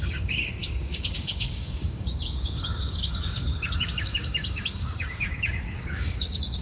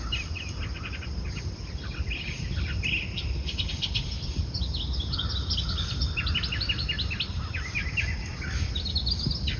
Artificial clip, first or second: first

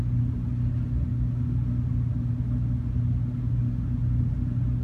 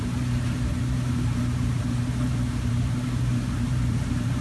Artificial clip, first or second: second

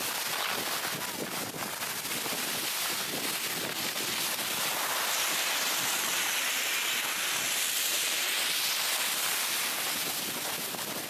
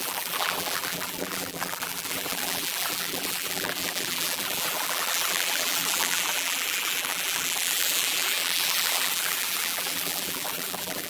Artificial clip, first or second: second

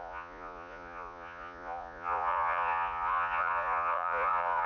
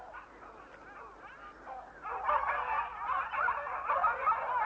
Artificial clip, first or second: first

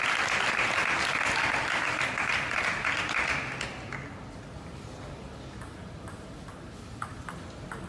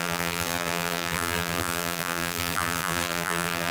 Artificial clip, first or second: second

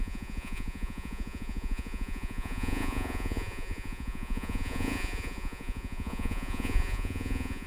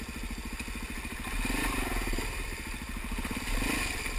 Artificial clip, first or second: first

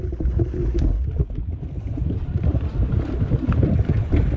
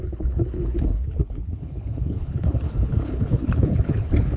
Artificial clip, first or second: second